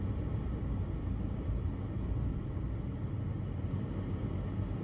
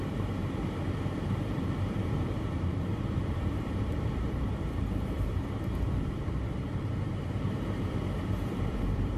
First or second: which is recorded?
first